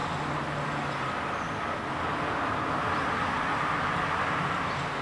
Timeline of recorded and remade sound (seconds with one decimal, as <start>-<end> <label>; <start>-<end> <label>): 0.0-5.0 recorded